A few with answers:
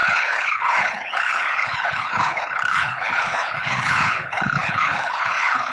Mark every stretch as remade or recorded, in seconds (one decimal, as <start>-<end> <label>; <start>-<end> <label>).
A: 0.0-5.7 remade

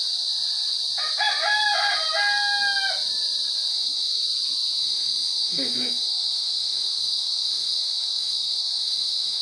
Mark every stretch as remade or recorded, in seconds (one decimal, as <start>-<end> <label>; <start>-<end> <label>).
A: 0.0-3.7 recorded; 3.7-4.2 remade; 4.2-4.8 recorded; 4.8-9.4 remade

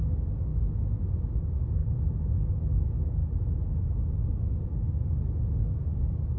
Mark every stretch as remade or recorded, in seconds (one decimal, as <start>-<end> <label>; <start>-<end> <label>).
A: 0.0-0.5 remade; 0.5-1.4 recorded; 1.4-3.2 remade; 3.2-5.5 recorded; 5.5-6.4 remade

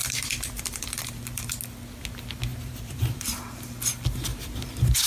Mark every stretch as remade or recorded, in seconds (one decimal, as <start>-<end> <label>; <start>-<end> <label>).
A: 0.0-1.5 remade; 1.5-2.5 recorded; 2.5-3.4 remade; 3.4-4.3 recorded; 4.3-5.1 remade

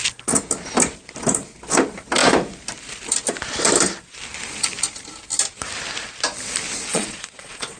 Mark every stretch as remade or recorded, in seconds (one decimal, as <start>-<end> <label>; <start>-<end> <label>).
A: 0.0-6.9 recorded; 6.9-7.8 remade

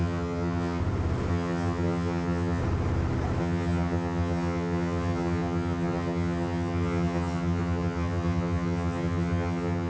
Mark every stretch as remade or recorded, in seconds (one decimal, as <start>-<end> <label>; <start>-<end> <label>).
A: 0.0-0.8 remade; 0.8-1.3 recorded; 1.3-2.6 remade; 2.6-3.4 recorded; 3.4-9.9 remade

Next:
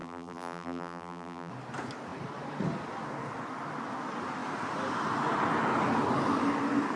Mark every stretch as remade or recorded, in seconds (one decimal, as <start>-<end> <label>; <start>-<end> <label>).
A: 0.0-1.5 remade; 1.5-7.0 recorded